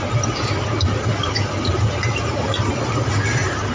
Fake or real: real